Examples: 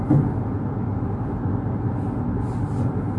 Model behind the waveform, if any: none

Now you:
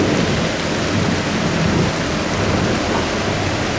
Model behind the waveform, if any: none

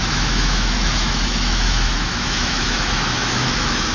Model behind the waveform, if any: autoencoder, DAC-VAE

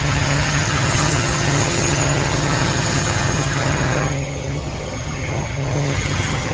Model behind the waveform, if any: vocoder, HiFi-GAN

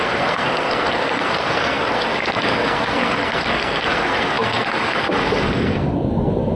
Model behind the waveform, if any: codec, SNAC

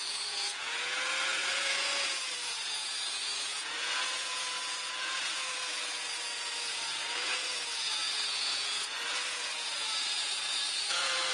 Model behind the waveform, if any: vocoder, Vocos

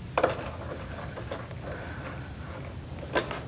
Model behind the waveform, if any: none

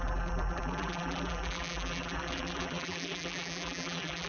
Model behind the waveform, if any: vocoder, BigVGAN v2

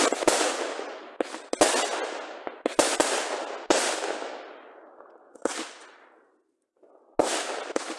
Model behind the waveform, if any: none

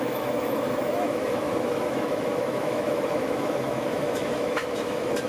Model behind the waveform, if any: autoencoder, DAC-VAE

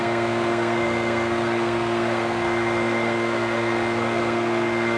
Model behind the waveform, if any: codec, SNAC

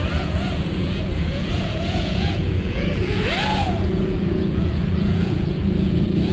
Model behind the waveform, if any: vocoder, Vocos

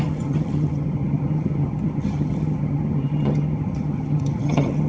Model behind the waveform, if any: vocoder, HiFi-GAN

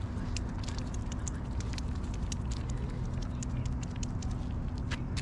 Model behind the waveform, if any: none